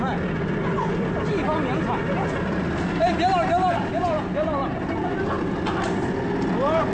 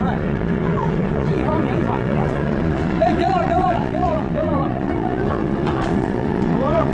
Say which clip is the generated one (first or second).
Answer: second